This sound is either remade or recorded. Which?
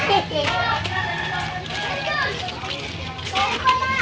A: recorded